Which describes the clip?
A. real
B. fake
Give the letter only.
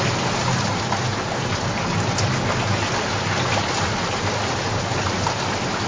A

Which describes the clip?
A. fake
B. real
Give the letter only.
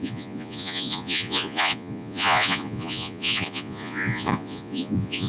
A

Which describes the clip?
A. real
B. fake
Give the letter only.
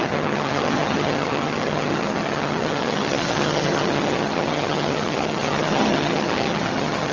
B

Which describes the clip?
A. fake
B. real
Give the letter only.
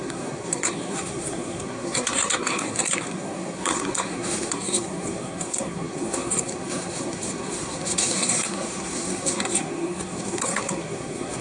A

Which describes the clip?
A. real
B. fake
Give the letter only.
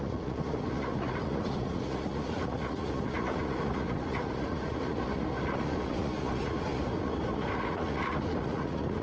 B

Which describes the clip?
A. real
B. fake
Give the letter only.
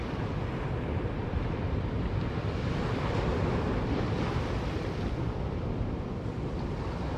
A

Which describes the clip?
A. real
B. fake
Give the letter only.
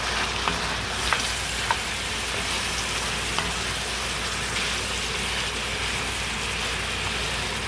A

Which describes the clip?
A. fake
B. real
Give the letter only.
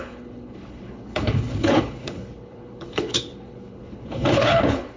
A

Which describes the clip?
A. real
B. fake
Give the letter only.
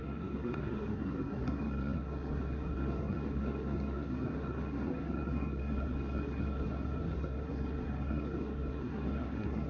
B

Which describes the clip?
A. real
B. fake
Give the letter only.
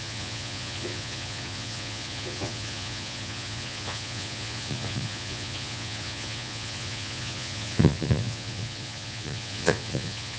B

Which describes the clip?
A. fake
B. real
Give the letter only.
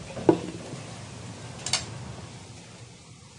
B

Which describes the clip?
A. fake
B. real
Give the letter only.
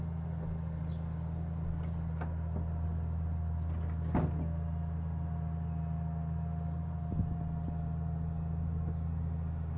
B